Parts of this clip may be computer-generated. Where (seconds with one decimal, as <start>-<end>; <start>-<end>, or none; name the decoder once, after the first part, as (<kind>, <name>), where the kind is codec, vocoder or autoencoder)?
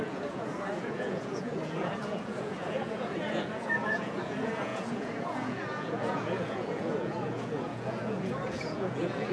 0.0-9.3 (vocoder, Vocos)